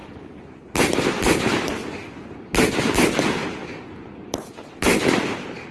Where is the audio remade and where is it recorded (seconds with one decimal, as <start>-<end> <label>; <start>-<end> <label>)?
0.0-0.6 remade; 0.6-5.7 recorded